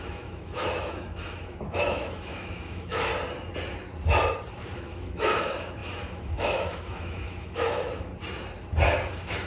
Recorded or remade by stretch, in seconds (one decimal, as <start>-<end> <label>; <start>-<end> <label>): 0.0-3.1 remade; 3.1-4.6 recorded; 4.6-8.1 remade; 8.1-9.1 recorded; 9.1-9.5 remade